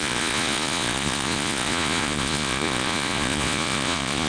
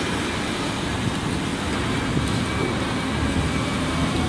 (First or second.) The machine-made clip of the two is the first